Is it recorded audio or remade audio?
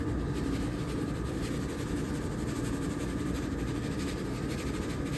recorded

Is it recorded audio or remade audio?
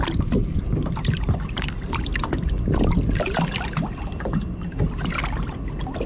remade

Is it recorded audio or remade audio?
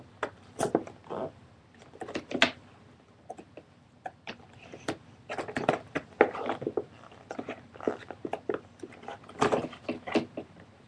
recorded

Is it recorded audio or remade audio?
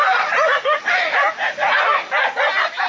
recorded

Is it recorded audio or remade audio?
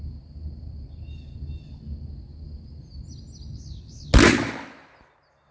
recorded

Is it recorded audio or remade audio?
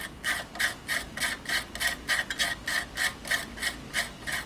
recorded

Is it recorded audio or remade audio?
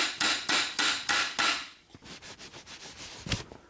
recorded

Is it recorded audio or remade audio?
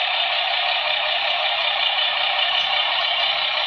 remade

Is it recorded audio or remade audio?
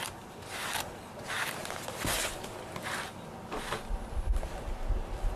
recorded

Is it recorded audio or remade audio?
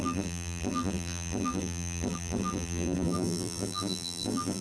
remade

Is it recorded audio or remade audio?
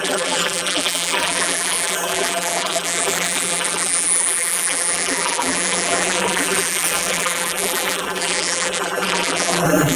remade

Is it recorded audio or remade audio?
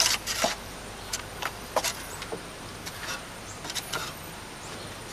remade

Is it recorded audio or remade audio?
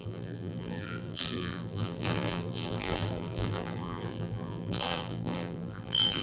remade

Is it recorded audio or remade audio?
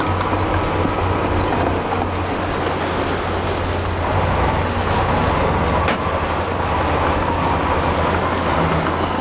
recorded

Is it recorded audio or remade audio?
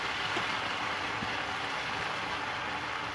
remade